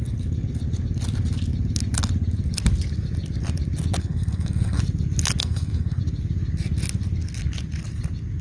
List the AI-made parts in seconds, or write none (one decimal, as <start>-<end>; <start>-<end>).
4.0-4.8; 5.4-6.0